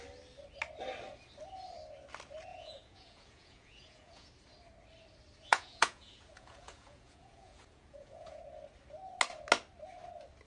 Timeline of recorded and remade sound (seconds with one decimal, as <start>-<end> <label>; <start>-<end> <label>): 0.0-2.5 recorded; 2.5-4.3 remade; 4.3-5.5 recorded; 5.5-8.4 remade; 8.4-10.5 recorded

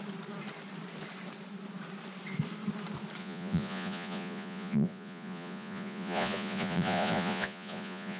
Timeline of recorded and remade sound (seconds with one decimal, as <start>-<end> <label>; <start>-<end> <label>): 0.0-3.2 recorded; 3.2-8.2 remade

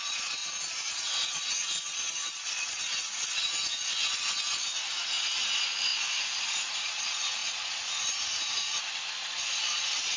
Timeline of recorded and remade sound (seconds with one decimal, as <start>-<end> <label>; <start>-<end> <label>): 0.0-10.2 remade